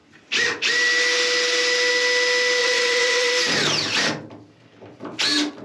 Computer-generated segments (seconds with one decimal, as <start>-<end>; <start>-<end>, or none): 2.6-3.3